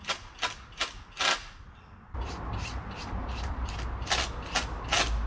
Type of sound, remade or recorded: recorded